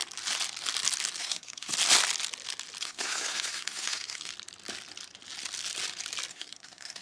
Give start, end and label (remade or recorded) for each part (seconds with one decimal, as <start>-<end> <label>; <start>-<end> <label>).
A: 0.0-1.2 recorded; 1.2-1.7 remade; 1.7-2.8 recorded; 2.8-4.3 remade; 4.3-6.3 recorded; 6.3-7.0 remade